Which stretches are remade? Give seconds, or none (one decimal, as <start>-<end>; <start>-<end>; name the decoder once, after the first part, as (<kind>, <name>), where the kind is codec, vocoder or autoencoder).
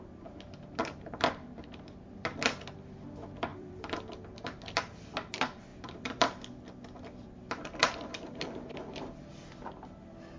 3.5-4.6 (vocoder, BigVGAN v2); 5.7-6.4; 7.8-9.3